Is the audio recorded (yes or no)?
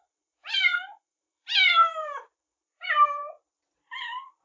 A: no